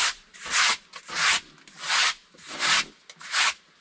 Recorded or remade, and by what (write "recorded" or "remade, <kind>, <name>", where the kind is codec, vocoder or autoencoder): recorded